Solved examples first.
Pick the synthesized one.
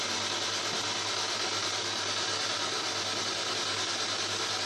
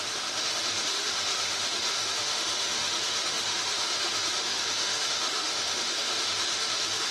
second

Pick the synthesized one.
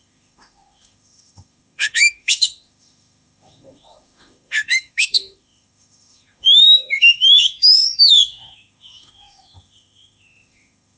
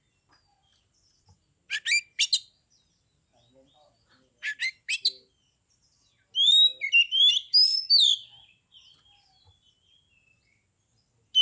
first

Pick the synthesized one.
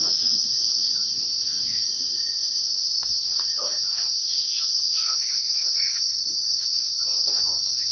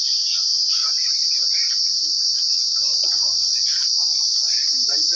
first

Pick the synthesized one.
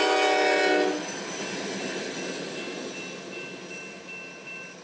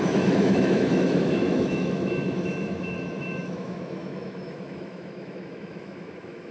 second